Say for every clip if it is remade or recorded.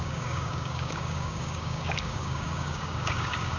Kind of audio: remade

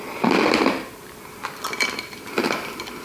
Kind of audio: recorded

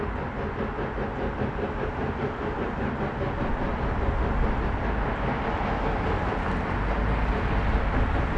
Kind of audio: recorded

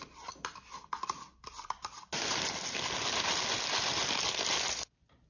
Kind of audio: recorded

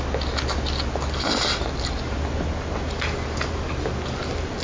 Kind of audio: recorded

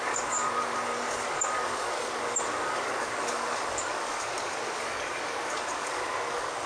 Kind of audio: remade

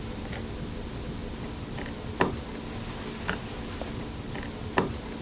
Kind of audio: recorded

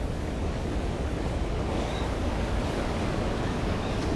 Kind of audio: remade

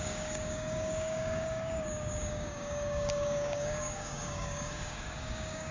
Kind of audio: remade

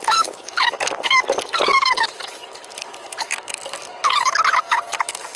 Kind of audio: remade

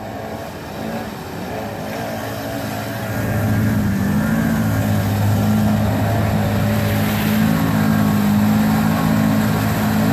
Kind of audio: recorded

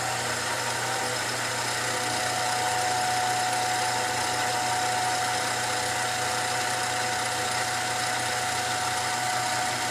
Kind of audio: recorded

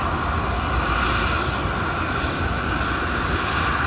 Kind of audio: recorded